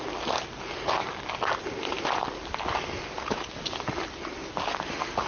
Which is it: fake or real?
real